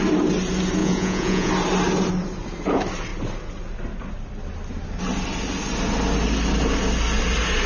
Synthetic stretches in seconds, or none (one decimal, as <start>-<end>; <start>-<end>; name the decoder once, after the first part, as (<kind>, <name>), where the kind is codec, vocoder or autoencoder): 0.8-1.5 (vocoder, Vocos)